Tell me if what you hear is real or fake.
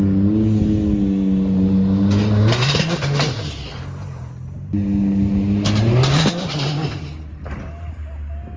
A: real